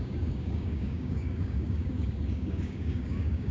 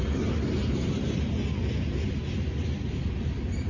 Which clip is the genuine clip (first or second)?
second